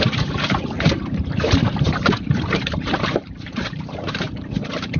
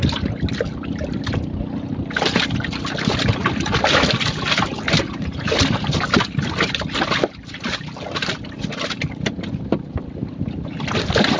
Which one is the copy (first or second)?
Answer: first